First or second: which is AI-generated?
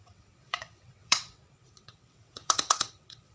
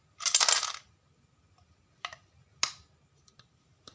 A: first